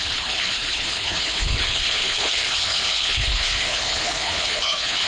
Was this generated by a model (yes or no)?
yes